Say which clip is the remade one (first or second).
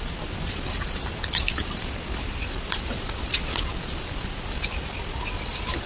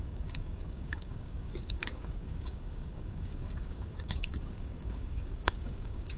second